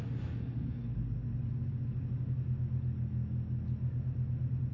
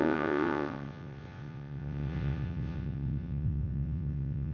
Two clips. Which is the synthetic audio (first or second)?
second